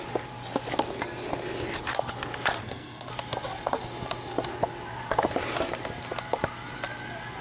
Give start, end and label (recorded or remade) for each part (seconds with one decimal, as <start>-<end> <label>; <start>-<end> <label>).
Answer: 0.0-2.6 recorded; 2.6-3.1 remade; 3.1-7.4 recorded